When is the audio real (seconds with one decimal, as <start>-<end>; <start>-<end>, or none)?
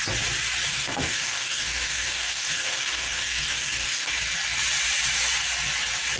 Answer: 0.0-0.7; 4.1-6.2